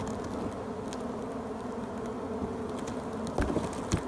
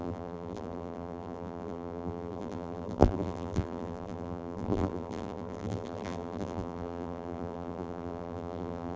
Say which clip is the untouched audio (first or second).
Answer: first